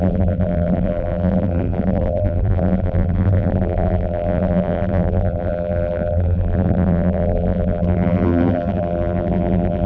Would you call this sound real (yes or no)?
no